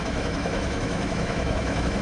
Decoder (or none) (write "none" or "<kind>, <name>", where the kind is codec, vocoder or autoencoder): autoencoder, DAC-VAE